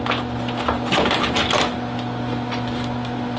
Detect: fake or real real